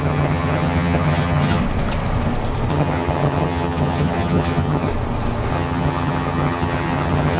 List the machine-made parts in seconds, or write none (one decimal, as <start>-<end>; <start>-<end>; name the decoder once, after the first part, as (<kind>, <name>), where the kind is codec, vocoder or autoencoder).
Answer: 0.0-1.6 (vocoder, HiFi-GAN); 2.7-4.9; 5.5-7.4